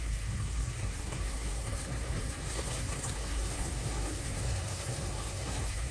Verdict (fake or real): fake